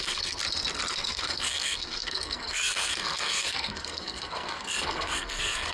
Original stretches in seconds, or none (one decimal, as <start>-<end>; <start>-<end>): 0.4-0.9